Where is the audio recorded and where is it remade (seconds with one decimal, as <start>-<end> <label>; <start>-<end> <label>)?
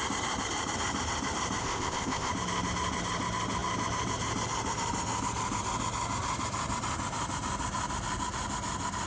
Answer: 0.0-1.6 recorded; 1.6-2.3 remade; 2.3-9.1 recorded